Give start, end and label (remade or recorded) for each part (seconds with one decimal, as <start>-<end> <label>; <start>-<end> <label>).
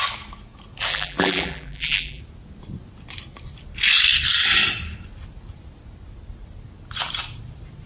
0.0-0.9 recorded; 0.9-2.2 remade; 2.2-7.9 recorded